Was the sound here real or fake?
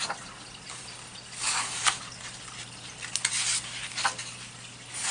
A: real